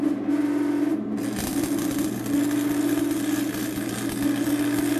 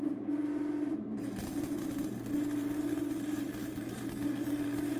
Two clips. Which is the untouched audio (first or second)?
first